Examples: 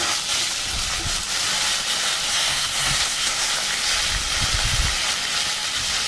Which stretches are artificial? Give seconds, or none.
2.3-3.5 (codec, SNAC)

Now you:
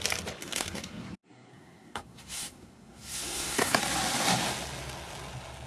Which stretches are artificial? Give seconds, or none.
0.4-3.8 (codec, SNAC)

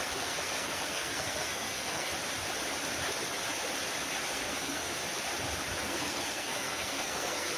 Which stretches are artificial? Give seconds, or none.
0.0-2.1 (codec, SNAC); 4.3-5.0; 5.8-7.6

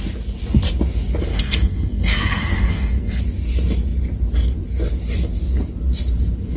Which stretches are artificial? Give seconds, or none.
1.3-3.2 (codec, SNAC)

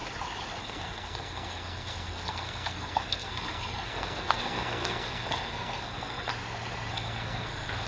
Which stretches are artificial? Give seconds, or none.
0.6-6.3 (codec, SNAC); 6.9-7.9

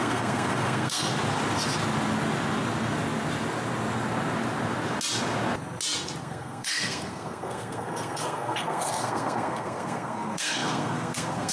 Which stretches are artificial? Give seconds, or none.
0.0-1.1 (codec, SNAC); 6.2-11.5

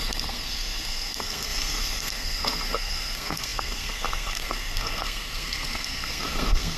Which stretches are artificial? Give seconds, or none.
0.0-6.8 (codec, SNAC)